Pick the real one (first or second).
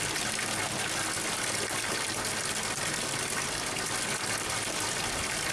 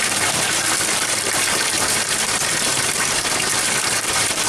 first